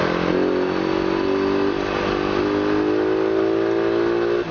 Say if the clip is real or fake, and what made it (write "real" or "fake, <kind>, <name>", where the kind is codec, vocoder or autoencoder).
real